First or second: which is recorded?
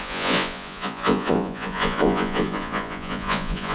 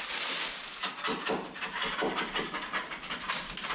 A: second